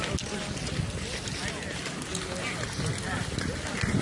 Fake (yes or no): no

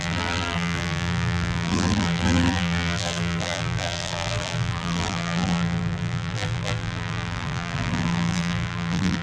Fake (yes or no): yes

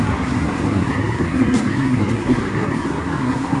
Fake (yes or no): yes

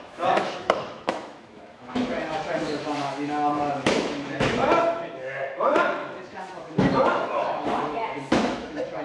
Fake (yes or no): yes